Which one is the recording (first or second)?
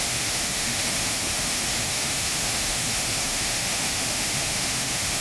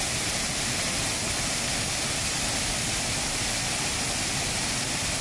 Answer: second